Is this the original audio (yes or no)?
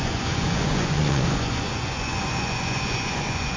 no